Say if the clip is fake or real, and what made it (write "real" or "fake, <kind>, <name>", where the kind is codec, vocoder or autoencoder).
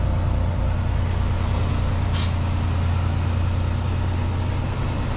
real